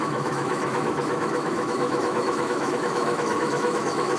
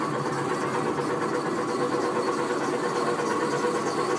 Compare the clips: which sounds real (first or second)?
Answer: second